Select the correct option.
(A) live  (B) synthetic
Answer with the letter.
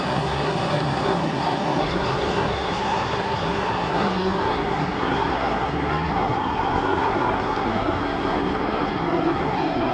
B